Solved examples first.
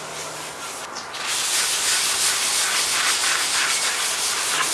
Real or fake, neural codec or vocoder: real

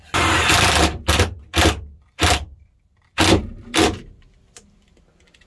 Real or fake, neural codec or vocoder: real